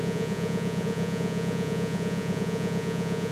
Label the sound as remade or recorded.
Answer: remade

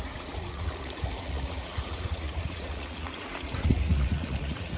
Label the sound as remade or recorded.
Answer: remade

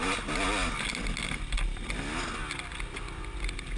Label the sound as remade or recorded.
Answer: recorded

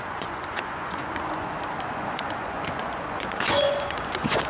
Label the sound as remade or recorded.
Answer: remade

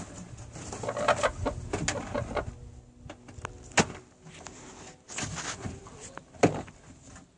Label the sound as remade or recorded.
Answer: recorded